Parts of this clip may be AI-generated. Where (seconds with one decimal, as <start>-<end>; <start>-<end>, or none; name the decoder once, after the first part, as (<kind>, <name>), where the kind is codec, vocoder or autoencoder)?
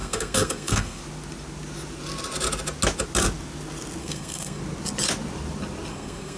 0.0-1.0 (codec, SNAC); 4.0-4.6; 5.9-6.4